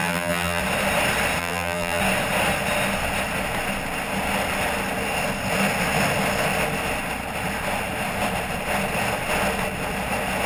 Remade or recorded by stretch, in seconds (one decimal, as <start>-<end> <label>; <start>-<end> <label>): 0.0-0.6 remade; 0.6-1.4 recorded; 1.4-2.0 remade; 2.0-10.5 recorded